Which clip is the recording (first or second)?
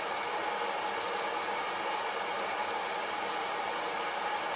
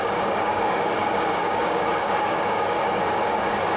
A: first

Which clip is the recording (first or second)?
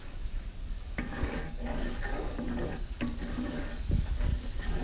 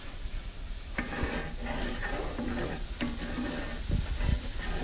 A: second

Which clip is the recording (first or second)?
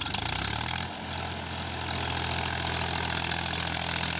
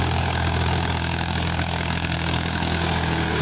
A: first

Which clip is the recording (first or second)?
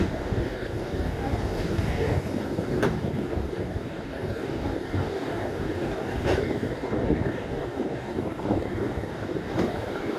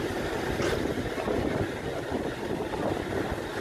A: second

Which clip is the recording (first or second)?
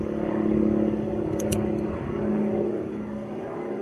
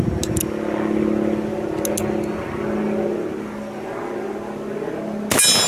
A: second